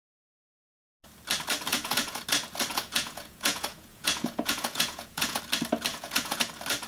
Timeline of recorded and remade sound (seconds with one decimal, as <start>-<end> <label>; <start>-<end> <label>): 0.0-1.7 recorded; 1.7-2.2 remade; 2.2-2.7 recorded; 2.7-5.4 remade; 5.4-5.9 recorded; 5.9-6.5 remade; 6.5-6.9 recorded